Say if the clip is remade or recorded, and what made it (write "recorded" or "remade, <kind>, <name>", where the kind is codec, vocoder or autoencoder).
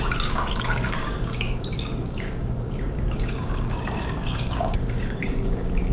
remade, codec, DAC